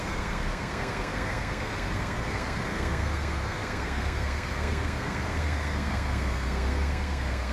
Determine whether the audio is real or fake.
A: fake